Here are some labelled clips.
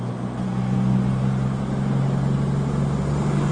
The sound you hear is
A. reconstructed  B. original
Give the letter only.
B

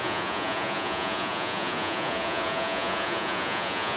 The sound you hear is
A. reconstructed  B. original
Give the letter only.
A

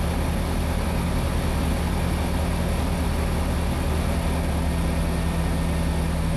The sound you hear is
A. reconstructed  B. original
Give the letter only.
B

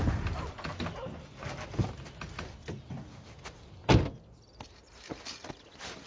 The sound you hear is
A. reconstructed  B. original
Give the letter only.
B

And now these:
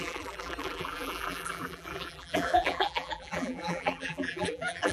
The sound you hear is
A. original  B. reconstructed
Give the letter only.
B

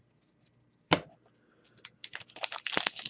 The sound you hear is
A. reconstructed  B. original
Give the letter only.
B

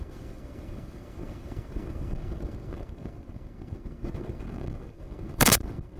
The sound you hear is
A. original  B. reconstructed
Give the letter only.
B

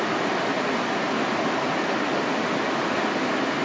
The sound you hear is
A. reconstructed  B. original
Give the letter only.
B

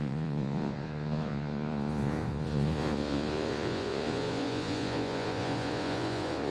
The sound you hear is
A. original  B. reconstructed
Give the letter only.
B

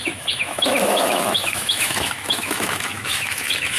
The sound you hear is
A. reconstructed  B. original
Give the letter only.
A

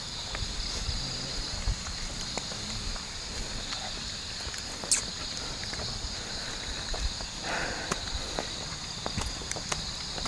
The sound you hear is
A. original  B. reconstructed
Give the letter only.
A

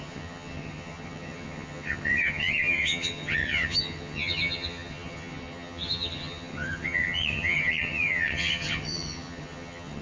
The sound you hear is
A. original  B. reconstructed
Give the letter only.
B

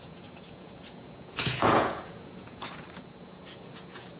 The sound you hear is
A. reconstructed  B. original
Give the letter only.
A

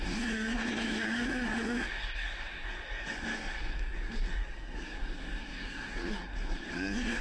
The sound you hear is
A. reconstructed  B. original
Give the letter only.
A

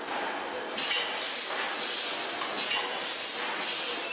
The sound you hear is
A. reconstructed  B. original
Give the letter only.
B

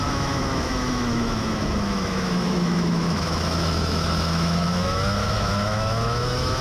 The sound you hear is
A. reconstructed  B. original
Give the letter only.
A